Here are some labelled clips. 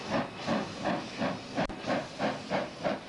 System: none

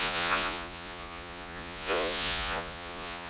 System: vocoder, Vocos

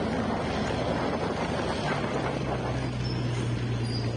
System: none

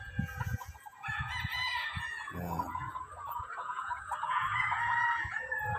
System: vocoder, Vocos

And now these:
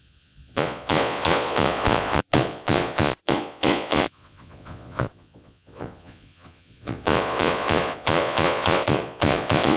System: vocoder, Vocos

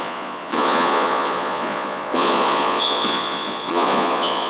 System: vocoder, Vocos